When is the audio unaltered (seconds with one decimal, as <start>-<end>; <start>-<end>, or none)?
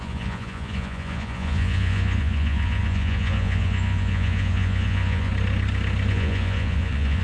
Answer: 5.3-6.1